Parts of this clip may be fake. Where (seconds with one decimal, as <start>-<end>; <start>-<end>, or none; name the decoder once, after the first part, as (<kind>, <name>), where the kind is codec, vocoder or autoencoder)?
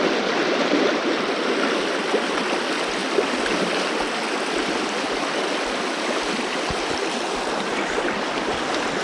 none